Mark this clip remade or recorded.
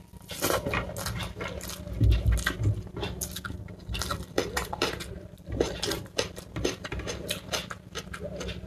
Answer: recorded